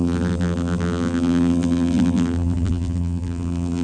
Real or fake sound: fake